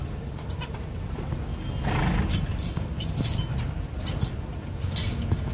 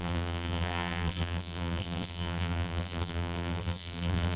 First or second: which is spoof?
second